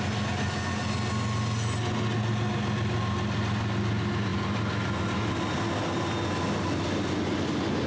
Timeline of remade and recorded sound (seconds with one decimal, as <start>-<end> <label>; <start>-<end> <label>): 0.0-7.9 recorded